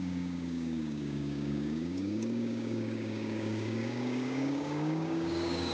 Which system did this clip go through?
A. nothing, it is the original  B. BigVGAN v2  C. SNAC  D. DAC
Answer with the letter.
D